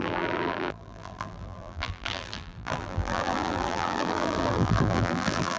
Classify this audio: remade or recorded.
remade